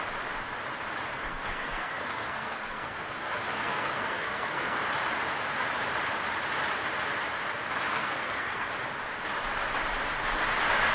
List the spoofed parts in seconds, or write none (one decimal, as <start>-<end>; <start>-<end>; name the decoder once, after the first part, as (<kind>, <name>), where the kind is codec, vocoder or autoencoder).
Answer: 1.1-4.8 (codec, SNAC); 7.9-8.7